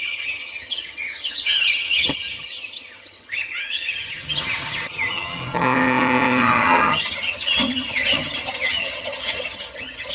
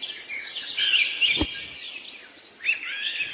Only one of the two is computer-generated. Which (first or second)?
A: first